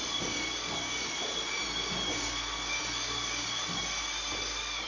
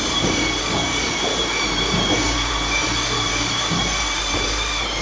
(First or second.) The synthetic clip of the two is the second